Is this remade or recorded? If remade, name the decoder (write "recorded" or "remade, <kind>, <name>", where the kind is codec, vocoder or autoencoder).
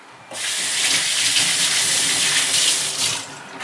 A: recorded